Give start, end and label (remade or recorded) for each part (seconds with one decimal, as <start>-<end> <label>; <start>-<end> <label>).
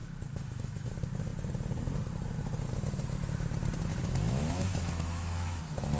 0.0-0.9 remade; 0.9-3.9 recorded; 3.9-5.6 remade; 5.6-6.0 recorded